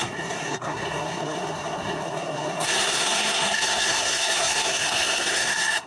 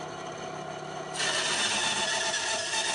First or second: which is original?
second